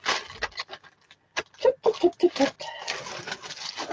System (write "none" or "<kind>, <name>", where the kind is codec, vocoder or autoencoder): none